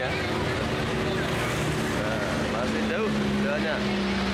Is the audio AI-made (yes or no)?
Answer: no